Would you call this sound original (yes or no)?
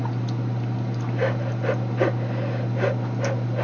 yes